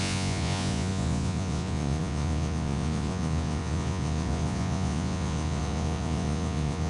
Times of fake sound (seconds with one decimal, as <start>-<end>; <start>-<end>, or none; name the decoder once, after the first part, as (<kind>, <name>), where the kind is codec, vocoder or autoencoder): 0.0-6.9 (vocoder, Vocos)